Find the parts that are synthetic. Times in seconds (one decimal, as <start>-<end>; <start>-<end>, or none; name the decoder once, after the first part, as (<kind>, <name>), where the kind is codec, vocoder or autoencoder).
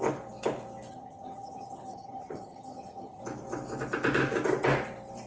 0.9-3.2 (vocoder, HiFi-GAN)